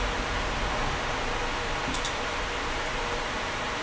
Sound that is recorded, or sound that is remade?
recorded